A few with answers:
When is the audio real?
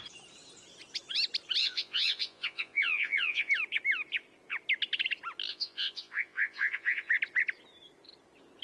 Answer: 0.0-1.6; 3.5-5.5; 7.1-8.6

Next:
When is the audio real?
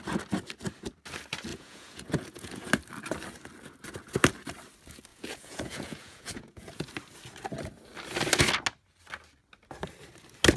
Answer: 0.0-1.5; 2.7-5.1; 6.9-10.6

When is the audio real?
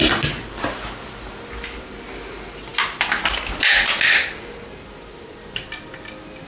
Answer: 0.0-6.5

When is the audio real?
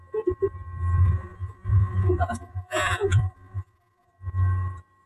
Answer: 0.0-1.0; 4.1-5.1